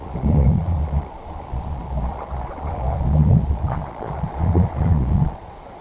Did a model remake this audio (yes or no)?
yes